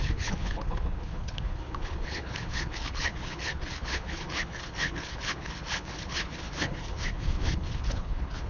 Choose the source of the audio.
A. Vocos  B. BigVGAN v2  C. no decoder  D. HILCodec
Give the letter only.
D